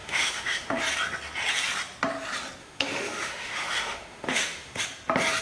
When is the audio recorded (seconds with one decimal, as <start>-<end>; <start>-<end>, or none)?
0.8-2.6; 4.8-5.4